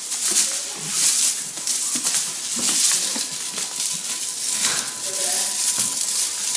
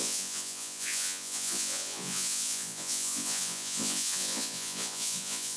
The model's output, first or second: second